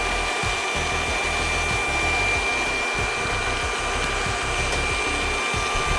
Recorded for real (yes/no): yes